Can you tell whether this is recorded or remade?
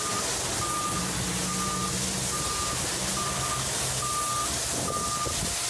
recorded